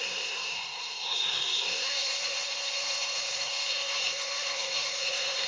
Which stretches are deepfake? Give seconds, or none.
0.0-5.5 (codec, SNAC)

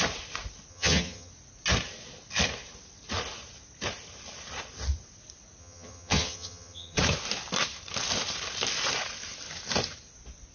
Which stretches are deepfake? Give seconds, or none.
0.7-1.3 (vocoder, HiFi-GAN); 5.6-7.0

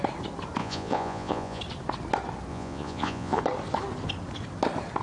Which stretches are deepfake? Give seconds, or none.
0.6-1.6 (vocoder, Vocos); 2.5-3.4

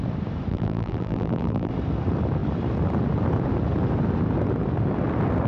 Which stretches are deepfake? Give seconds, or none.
0.5-1.7 (vocoder, BigVGAN v2)

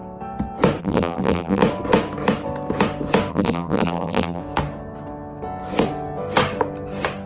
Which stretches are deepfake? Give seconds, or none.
0.8-1.6 (vocoder, BigVGAN v2); 3.3-4.4